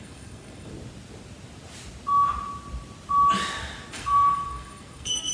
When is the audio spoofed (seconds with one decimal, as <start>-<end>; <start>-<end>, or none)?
0.0-0.7; 3.9-5.3